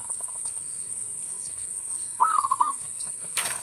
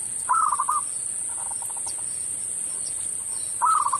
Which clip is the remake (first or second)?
first